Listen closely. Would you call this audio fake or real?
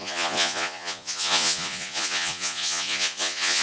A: fake